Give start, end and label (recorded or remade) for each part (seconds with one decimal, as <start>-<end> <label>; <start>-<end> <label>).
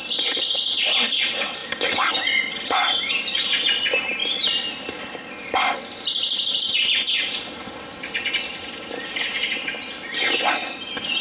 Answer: 0.0-11.2 recorded